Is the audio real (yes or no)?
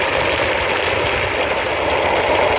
yes